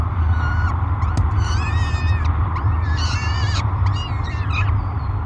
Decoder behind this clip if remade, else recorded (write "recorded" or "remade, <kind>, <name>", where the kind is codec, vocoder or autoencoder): recorded